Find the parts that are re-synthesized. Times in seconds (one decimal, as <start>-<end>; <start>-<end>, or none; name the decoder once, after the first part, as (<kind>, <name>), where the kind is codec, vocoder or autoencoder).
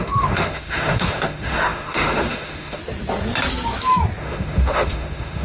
0.0-2.8 (autoencoder, DAC-VAE); 4.2-5.4